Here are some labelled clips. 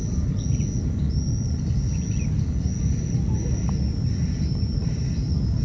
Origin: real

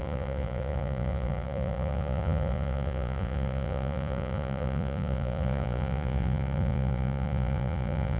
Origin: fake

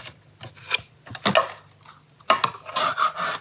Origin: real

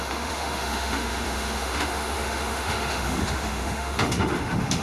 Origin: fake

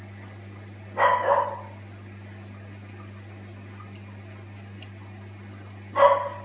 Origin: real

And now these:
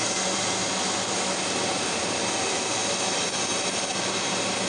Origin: real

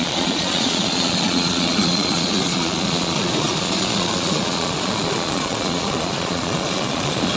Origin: fake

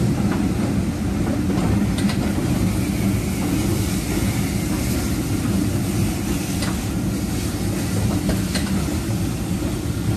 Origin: real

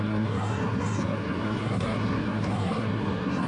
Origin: fake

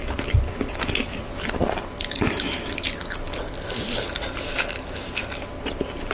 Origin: real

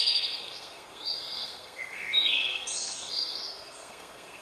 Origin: fake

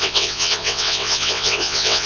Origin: fake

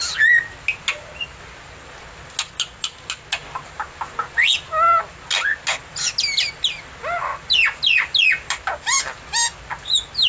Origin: real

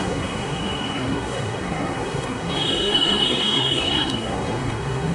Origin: fake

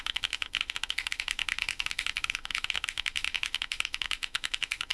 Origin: fake